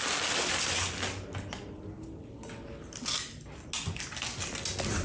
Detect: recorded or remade recorded